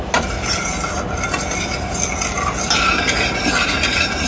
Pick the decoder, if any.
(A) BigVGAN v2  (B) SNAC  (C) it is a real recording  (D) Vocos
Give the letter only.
C